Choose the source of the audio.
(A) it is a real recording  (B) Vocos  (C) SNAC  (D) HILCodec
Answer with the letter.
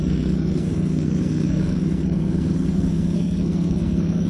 C